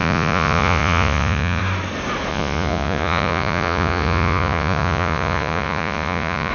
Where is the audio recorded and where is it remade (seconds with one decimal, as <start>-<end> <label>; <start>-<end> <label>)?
0.0-1.6 remade; 1.6-2.3 recorded; 2.3-6.5 remade